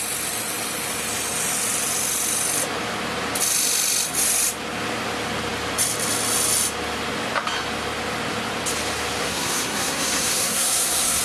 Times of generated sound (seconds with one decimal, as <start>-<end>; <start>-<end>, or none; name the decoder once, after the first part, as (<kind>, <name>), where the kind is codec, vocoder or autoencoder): 9.2-11.2 (codec, SNAC)